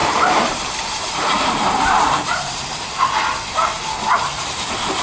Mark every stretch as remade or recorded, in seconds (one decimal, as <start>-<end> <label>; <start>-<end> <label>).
0.0-3.0 remade; 3.0-4.3 recorded; 4.3-5.0 remade